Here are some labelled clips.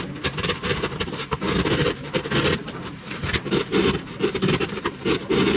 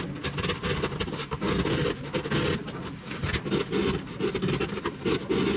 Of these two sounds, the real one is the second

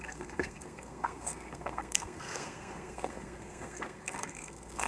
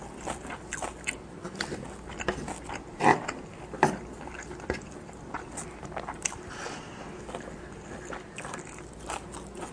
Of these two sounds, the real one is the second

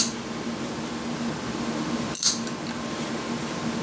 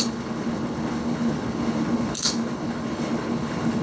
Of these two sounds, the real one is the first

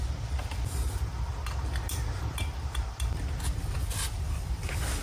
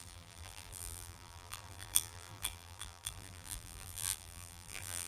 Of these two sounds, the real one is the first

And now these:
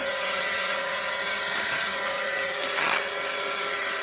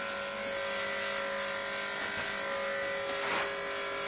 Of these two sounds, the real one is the second